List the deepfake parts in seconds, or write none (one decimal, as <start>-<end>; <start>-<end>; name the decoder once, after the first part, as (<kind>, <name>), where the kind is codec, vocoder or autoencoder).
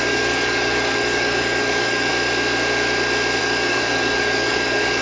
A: 0.0-2.1 (codec, DAC); 3.4-5.0